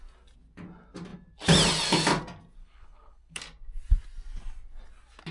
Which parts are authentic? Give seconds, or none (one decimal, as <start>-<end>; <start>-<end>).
0.0-2.6; 3.4-5.3